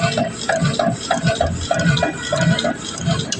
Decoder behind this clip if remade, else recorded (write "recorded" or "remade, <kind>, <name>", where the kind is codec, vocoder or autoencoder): recorded